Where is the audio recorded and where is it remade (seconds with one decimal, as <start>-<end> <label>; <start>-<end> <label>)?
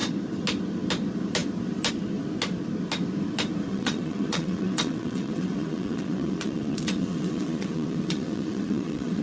0.0-3.7 recorded; 3.7-9.2 remade